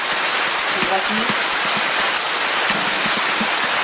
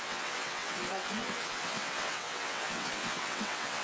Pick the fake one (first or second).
second